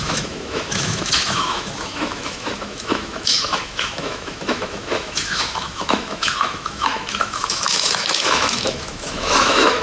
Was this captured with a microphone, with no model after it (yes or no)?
no